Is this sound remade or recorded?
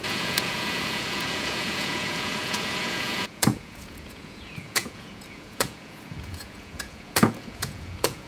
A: remade